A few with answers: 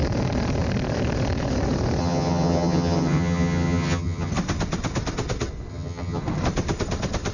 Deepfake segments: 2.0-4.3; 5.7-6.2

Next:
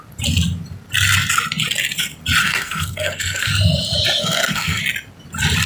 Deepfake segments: 2.4-3.5; 4.2-4.8

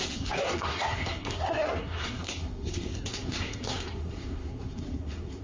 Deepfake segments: 0.0-5.4